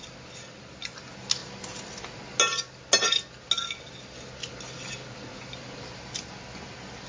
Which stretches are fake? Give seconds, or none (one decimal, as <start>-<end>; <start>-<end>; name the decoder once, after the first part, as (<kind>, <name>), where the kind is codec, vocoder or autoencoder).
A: none